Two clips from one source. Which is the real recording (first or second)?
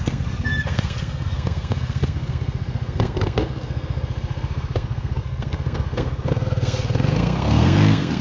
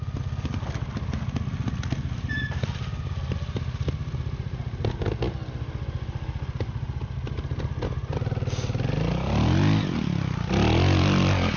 second